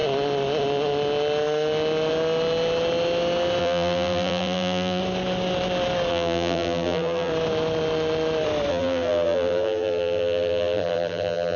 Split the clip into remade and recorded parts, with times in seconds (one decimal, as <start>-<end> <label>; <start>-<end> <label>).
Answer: 0.0-3.6 recorded; 3.6-5.0 remade; 5.0-6.1 recorded; 6.1-7.3 remade; 7.3-8.7 recorded; 8.7-11.6 remade